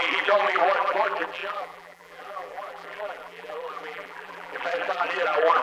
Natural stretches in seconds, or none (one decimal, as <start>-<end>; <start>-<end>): none